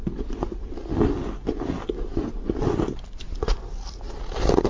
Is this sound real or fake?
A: real